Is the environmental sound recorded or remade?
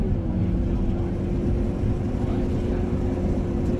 recorded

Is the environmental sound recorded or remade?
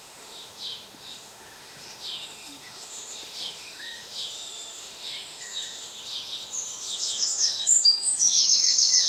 remade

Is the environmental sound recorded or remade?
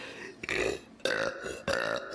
recorded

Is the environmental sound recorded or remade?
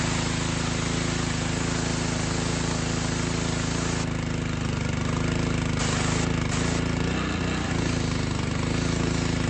recorded